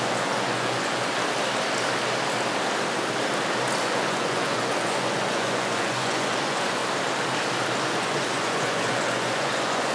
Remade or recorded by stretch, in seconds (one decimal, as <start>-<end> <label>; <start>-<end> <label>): 0.0-1.1 remade; 1.1-3.8 recorded; 3.8-6.8 remade; 6.8-7.8 recorded; 7.8-9.9 remade